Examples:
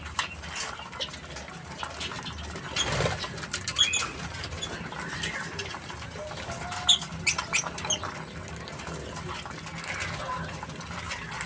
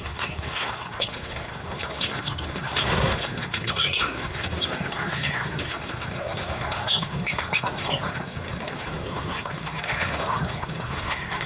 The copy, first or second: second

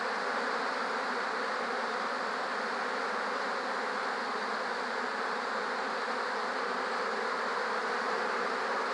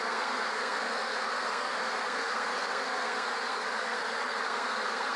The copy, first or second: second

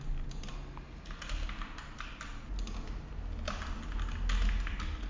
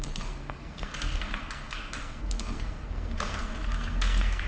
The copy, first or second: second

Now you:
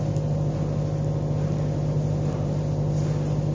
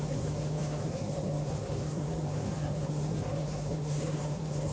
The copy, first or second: second